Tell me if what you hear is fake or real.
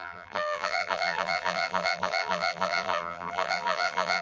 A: fake